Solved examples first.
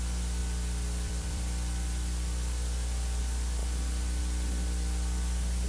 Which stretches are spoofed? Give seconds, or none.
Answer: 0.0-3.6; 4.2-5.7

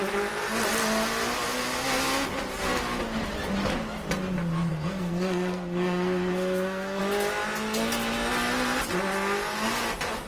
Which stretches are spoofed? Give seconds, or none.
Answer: 4.7-7.0